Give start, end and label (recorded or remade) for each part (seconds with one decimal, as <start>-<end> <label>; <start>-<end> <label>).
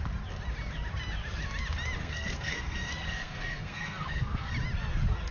0.0-2.0 recorded; 2.0-4.5 remade; 4.5-5.3 recorded